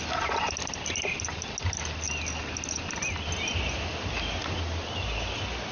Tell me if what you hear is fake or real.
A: real